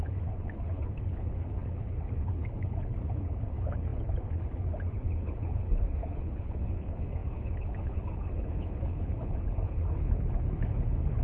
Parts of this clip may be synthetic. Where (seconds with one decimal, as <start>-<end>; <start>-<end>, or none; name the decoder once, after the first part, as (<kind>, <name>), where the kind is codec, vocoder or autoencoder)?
0.0-11.2 (codec, HILCodec)